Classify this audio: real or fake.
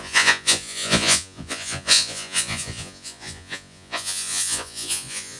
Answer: fake